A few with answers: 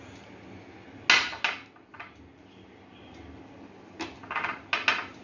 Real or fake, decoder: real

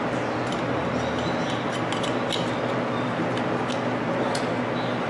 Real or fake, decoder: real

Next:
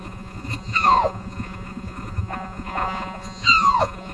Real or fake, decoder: fake, vocoder, Vocos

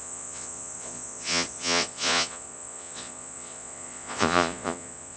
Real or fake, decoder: fake, vocoder, Vocos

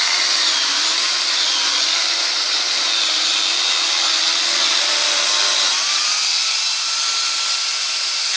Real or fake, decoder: real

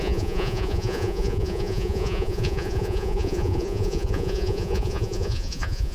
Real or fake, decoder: fake, vocoder, Vocos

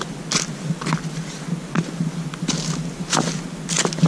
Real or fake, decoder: real